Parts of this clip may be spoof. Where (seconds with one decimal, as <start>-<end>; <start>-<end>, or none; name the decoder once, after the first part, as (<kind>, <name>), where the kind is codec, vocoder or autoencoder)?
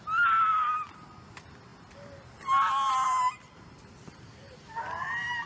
none